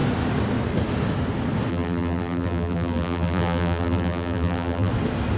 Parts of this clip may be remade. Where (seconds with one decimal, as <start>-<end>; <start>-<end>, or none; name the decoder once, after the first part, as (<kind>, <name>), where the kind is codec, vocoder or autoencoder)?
1.7-4.9 (vocoder, BigVGAN v2)